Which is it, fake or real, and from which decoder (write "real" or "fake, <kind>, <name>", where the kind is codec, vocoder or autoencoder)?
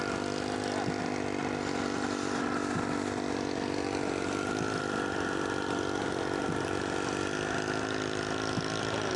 real